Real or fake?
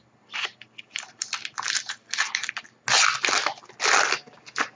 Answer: real